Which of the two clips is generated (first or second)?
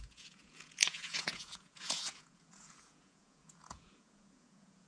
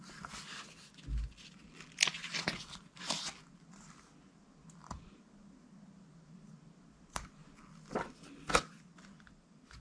first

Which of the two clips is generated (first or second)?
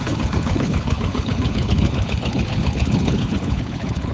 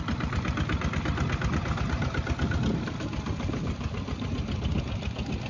first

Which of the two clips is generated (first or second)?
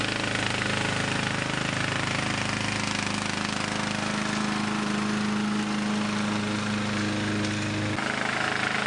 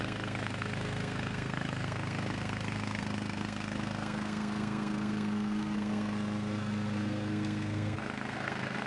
second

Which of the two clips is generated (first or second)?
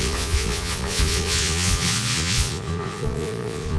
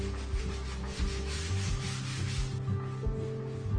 first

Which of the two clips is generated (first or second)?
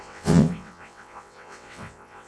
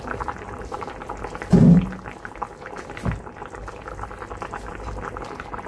first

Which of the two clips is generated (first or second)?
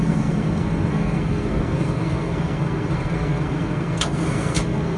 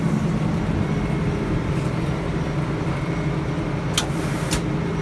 first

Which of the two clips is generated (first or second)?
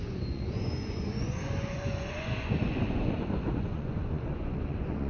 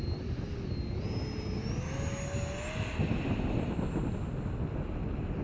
first